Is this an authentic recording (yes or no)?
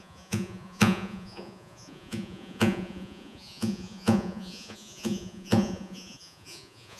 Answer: no